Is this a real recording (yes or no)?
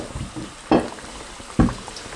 yes